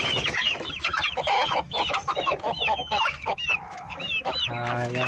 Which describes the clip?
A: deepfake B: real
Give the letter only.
A